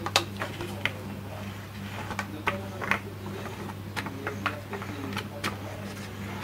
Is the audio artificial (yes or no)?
no